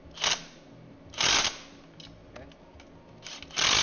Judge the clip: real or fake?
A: real